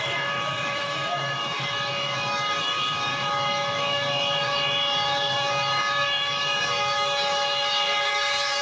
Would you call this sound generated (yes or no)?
yes